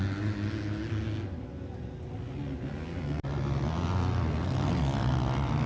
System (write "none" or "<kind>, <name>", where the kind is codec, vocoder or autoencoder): none